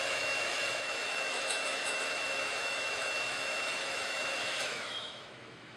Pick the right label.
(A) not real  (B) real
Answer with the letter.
A